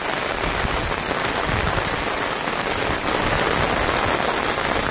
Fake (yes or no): no